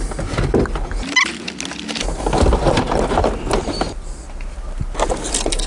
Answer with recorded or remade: recorded